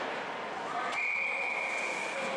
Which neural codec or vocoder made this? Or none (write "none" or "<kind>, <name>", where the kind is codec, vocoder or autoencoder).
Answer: none